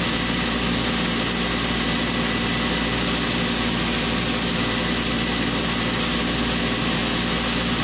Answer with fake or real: real